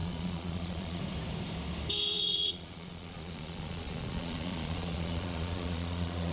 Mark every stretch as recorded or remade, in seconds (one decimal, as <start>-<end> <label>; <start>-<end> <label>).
0.0-1.0 remade; 1.0-2.1 recorded; 2.1-6.3 remade